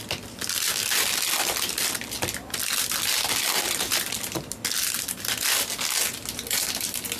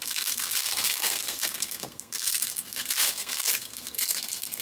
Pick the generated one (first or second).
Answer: second